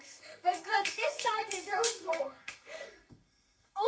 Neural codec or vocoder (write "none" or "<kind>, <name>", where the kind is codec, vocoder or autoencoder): codec, SNAC